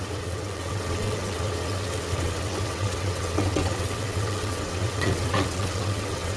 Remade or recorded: remade